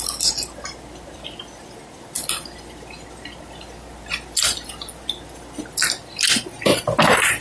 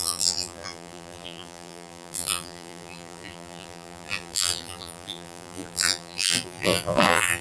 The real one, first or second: first